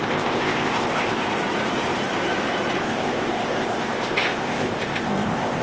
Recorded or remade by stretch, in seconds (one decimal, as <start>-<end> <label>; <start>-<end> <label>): 0.0-1.2 remade; 1.2-2.8 recorded; 2.8-5.6 remade